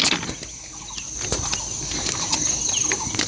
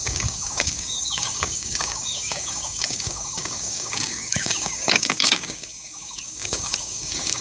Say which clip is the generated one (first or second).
second